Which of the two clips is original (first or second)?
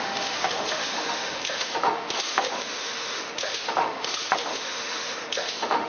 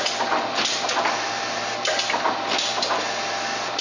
second